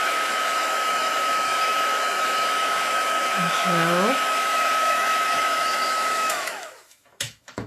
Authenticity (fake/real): fake